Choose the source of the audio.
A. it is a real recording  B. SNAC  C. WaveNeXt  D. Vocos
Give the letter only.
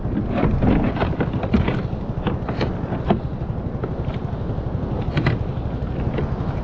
A